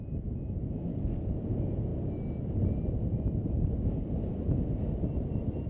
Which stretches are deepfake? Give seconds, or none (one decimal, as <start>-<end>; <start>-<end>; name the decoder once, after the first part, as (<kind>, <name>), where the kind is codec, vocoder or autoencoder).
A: 0.9-1.4 (codec, DAC)